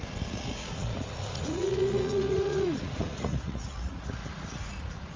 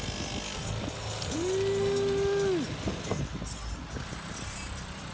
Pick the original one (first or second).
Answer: second